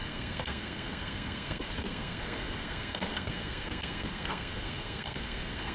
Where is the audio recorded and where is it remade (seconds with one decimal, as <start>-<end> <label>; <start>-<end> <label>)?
0.0-5.7 remade